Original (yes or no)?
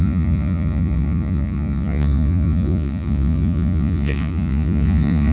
no